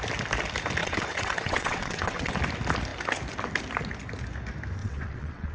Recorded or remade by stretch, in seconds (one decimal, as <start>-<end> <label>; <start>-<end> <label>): 0.0-0.8 recorded; 0.8-2.3 remade; 2.3-4.8 recorded; 4.8-5.5 remade